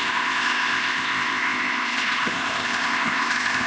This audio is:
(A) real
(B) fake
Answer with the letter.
B